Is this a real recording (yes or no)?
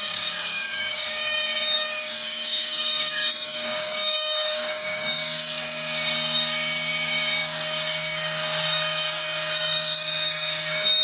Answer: no